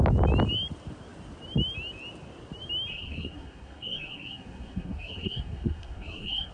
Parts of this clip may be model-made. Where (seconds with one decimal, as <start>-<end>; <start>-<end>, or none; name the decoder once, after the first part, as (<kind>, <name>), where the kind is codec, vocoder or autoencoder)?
2.9-6.5 (codec, SNAC)